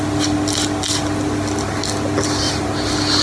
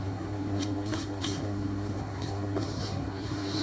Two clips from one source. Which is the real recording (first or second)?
first